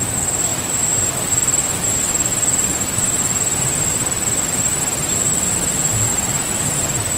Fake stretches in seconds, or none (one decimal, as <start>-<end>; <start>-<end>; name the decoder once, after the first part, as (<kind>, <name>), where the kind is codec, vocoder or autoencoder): 0.0-0.5 (vocoder, BigVGAN v2); 1.1-2.3; 3.6-7.2